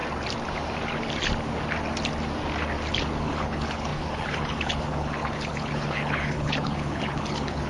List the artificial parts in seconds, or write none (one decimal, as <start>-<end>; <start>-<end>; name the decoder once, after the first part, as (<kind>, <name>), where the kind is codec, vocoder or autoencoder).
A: 3.2-7.7 (codec, HILCodec)